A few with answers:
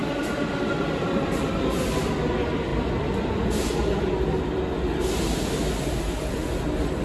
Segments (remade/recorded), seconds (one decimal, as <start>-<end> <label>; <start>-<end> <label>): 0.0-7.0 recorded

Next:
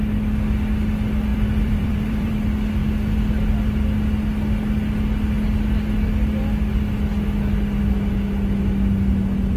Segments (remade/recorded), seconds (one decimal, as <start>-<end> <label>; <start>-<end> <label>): 0.0-1.3 recorded; 1.3-2.3 remade; 2.3-9.6 recorded

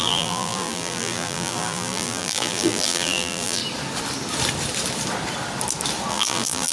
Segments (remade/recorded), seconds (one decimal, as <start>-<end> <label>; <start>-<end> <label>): 0.0-3.6 remade; 3.6-6.1 recorded; 6.1-6.7 remade